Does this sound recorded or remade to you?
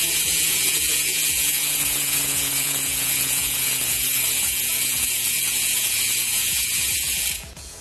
remade